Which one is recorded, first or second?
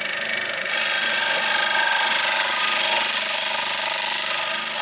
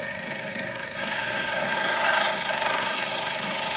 first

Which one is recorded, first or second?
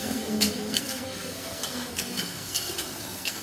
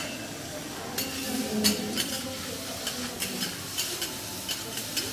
second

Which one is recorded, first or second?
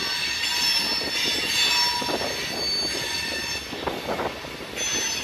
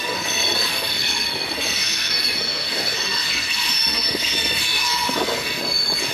first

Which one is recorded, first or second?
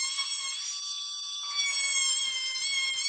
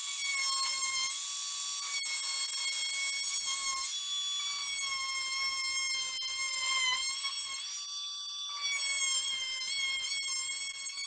second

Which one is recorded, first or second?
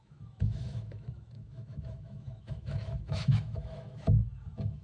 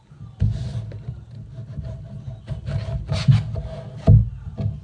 second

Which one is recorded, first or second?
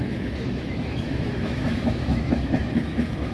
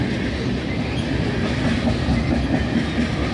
second